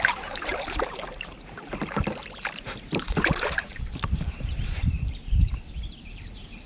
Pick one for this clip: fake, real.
fake